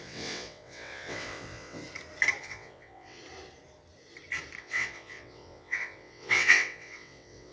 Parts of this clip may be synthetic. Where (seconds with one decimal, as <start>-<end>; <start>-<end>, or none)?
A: 0.0-1.8; 2.4-3.2; 4.6-7.5